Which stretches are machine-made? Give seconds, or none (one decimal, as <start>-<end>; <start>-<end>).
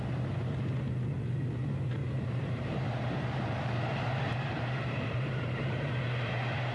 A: 2.0-6.0